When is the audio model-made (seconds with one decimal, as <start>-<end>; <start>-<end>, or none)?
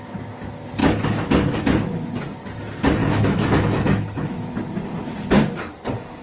0.8-2.1; 3.0-4.5